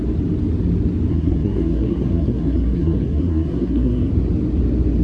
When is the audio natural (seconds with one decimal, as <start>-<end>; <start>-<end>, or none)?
0.0-1.1; 4.1-5.0